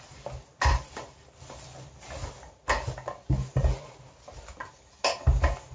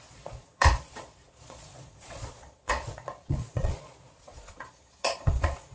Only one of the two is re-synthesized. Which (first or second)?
second